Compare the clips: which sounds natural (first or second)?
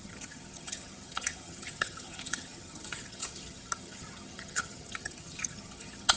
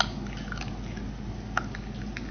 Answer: second